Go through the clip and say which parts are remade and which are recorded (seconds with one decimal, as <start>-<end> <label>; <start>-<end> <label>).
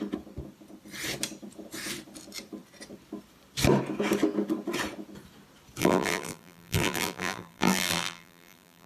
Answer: 0.0-5.8 recorded; 5.8-8.9 remade